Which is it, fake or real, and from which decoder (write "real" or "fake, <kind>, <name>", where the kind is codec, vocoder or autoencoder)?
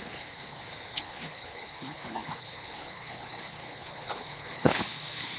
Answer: fake, codec, HILCodec